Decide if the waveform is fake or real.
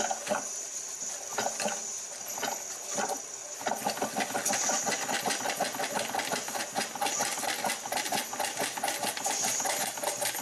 real